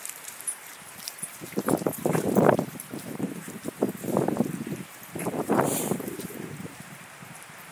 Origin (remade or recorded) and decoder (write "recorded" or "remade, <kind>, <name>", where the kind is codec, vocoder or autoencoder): remade, vocoder, BigVGAN v2